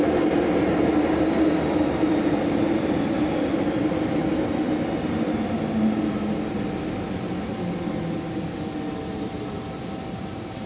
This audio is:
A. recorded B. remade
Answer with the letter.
A